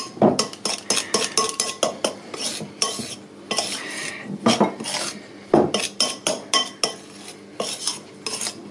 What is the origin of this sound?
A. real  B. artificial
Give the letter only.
A